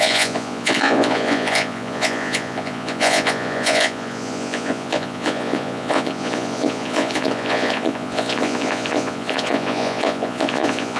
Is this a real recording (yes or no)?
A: no